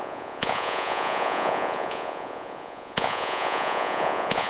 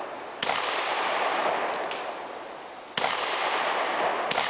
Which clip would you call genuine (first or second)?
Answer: second